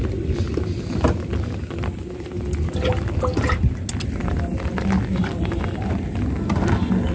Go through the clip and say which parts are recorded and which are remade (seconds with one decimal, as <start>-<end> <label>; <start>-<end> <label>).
0.0-7.1 recorded